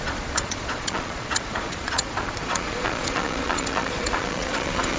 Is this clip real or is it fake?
fake